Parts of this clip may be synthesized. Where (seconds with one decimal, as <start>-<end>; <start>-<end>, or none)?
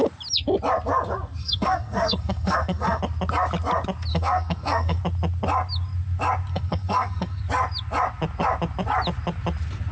1.4-3.0; 4.1-5.0; 6.5-7.4